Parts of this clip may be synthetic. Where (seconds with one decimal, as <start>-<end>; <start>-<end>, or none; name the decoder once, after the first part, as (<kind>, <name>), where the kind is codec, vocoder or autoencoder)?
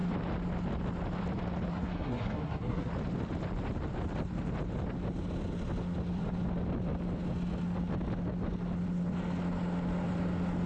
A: 1.7-2.9 (codec, SNAC)